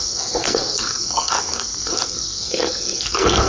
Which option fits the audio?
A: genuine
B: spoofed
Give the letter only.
B